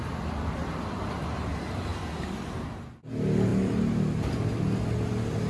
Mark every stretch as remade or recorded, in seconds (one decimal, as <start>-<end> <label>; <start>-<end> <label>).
0.0-5.5 recorded